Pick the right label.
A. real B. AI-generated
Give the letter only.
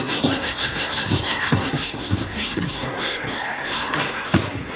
B